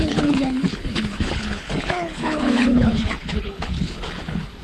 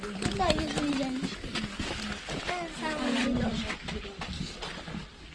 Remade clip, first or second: first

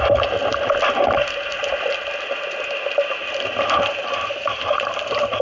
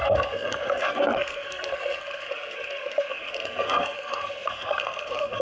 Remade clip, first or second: second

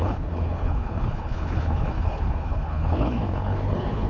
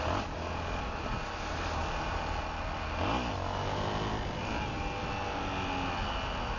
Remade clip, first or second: first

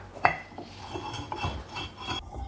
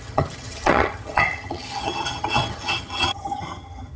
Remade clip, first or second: second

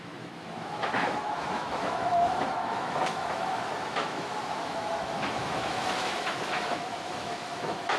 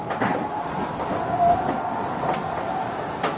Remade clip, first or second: first